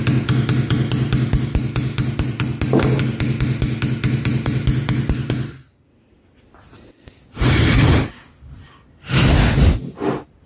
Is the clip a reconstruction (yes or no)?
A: no